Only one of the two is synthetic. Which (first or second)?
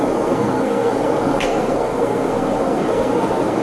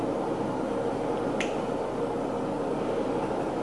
first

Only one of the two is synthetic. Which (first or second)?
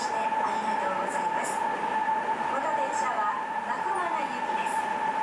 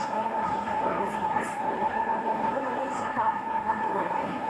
second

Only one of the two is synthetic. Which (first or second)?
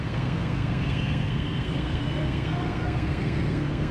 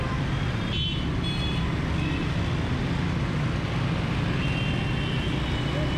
first